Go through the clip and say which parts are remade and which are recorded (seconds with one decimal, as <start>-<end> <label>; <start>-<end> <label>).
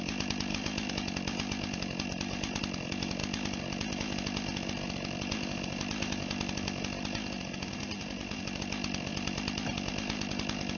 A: 0.0-0.5 recorded; 0.5-2.6 remade; 2.6-9.1 recorded; 9.1-9.9 remade; 9.9-10.8 recorded